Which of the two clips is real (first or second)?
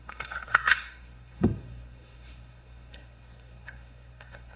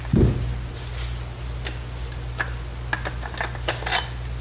second